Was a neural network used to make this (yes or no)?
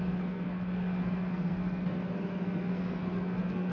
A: yes